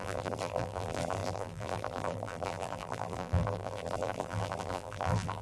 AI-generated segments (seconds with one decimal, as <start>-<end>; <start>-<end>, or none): 0.0-5.4